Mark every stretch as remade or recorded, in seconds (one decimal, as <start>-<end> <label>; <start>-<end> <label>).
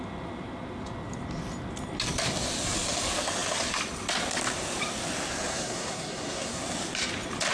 0.0-5.5 recorded; 5.5-6.6 remade; 6.6-7.5 recorded